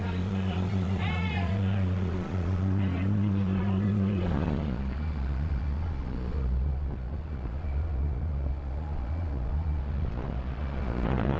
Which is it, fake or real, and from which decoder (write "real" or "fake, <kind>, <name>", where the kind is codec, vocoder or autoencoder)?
fake, vocoder, Vocos